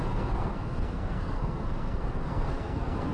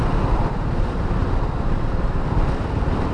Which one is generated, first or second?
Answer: first